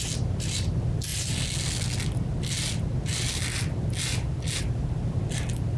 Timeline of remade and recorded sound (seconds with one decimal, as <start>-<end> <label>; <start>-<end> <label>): 0.0-5.8 recorded